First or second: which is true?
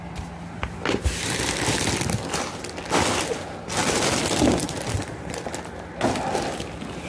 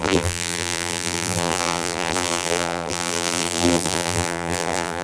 first